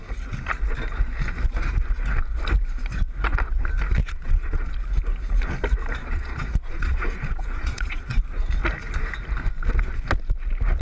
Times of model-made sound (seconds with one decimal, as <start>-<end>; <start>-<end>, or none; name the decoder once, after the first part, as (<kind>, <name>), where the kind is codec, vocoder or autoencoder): 4.0-4.7 (vocoder, Vocos); 6.0-8.2